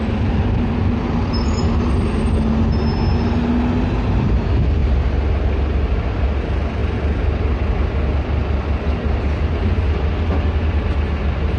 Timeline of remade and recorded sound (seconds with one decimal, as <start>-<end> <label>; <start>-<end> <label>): 0.0-11.6 recorded